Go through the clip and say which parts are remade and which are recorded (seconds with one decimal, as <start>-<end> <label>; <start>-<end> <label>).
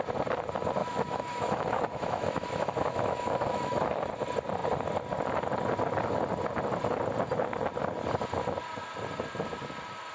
0.0-0.8 recorded; 0.8-4.1 remade; 4.1-10.1 recorded